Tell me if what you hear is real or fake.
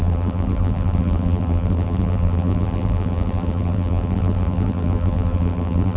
fake